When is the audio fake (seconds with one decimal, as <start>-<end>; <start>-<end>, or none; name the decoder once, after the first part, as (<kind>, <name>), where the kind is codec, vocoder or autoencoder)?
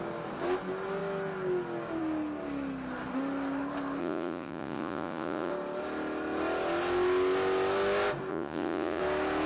4.0-5.5 (vocoder, Vocos); 8.3-9.0